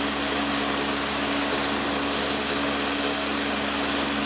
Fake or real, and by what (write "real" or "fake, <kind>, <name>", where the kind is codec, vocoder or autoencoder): real